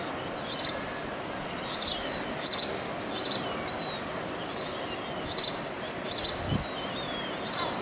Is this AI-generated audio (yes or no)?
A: no